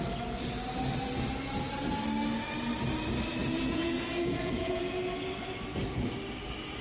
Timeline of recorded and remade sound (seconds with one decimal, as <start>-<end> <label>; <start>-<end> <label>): 0.0-3.4 recorded; 3.4-4.8 remade; 4.8-6.8 recorded